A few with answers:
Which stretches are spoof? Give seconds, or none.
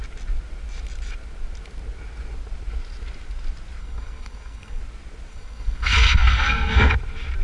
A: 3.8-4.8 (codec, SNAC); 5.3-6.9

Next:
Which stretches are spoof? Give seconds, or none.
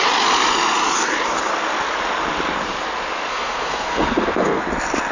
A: 3.3-4.6 (codec, SNAC)